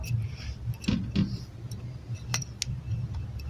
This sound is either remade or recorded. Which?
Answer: recorded